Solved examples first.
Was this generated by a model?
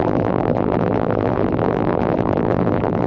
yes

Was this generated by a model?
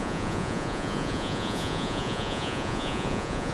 yes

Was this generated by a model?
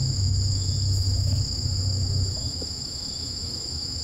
yes